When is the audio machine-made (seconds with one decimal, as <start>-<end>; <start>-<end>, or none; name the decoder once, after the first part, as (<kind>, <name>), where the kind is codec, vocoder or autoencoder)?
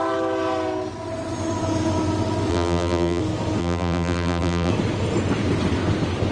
2.5-3.2 (vocoder, BigVGAN v2); 3.6-4.7